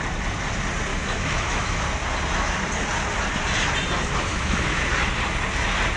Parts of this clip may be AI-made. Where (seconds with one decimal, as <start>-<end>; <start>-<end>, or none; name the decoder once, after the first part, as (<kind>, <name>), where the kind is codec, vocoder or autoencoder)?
0.9-1.8 (autoencoder, DAC-VAE); 4.3-4.8